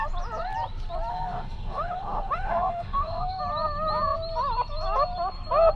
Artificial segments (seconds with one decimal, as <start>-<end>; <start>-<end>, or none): 1.1-3.4